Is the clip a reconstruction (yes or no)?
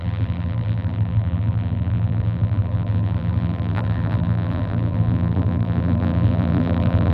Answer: yes